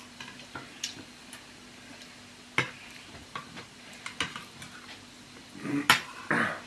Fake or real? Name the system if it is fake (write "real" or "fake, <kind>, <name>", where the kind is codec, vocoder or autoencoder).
real